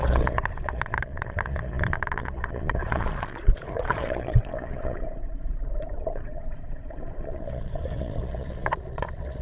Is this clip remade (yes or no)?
yes